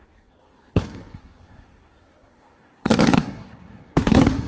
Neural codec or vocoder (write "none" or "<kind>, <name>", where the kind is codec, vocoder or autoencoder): codec, SNAC